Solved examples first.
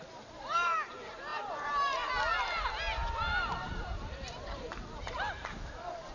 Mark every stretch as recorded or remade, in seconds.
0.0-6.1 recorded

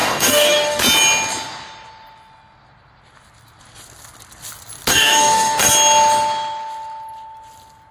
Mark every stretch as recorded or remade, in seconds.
0.0-0.8 remade; 0.8-4.9 recorded; 4.9-5.7 remade; 5.7-7.9 recorded

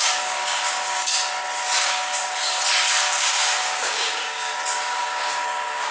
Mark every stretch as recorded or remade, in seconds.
0.0-1.1 remade; 1.1-1.8 recorded; 1.8-2.2 remade; 2.2-3.2 recorded; 3.2-4.5 remade; 4.5-5.0 recorded; 5.0-5.9 remade

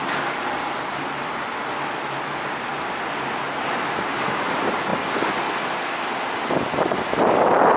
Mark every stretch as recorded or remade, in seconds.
0.0-7.8 recorded

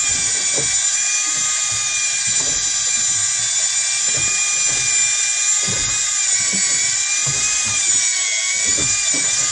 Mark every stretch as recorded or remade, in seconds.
0.0-9.5 recorded

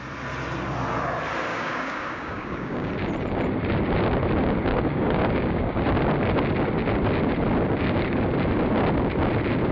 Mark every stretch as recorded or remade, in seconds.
0.0-1.5 recorded; 1.5-2.9 remade; 2.9-4.7 recorded; 4.7-5.8 remade; 5.8-9.7 recorded

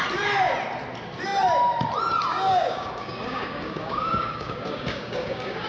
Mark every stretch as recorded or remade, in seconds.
0.0-2.3 recorded; 2.3-5.7 remade

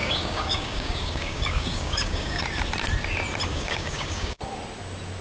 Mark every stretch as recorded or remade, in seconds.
0.0-2.4 remade; 2.4-3.5 recorded; 3.5-4.4 remade; 4.4-5.2 recorded